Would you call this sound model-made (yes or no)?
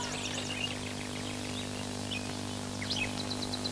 no